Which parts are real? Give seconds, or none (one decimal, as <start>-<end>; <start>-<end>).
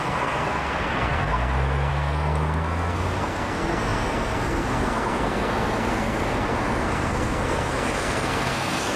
none